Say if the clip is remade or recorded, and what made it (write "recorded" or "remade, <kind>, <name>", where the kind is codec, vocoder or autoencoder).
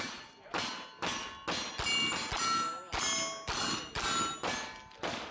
recorded